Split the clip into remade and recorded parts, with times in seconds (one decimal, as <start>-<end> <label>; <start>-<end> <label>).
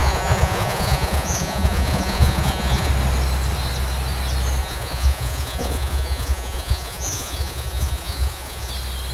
0.0-2.9 remade; 2.9-4.6 recorded; 4.6-8.7 remade; 8.7-9.1 recorded